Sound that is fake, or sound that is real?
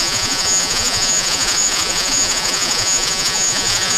fake